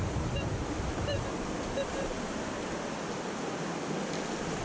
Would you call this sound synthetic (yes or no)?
no